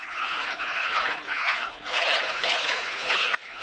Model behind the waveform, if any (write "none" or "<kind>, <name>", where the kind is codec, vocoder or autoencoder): codec, HILCodec